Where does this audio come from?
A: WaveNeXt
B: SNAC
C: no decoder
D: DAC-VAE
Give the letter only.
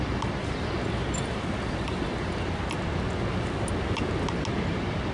C